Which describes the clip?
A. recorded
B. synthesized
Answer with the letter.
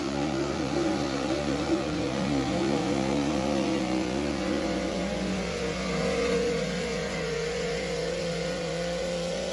B